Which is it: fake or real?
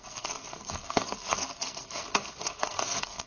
fake